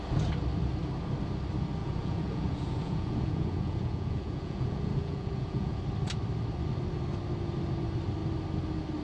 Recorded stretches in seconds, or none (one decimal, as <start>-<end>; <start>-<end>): 0.0-1.8; 5.8-9.0